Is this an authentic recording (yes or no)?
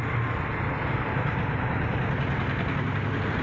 yes